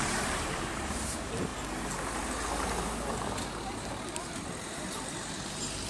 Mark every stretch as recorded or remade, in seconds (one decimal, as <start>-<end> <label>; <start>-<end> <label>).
0.0-1.5 remade; 1.5-4.2 recorded; 4.2-5.9 remade